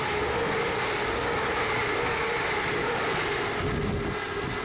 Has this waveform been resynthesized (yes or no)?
no